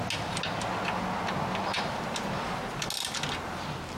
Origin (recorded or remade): recorded